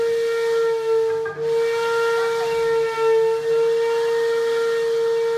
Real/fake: real